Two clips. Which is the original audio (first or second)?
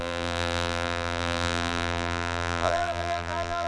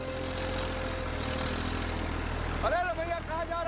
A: second